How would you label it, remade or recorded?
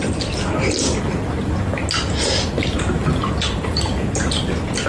recorded